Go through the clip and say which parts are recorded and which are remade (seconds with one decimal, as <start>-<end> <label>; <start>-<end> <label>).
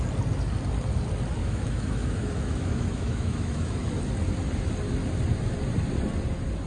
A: 0.0-1.4 recorded; 1.4-3.9 remade; 3.9-6.7 recorded